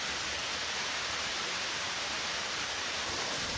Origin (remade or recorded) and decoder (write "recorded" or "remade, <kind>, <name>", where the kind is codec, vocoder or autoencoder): remade, vocoder, BigVGAN v2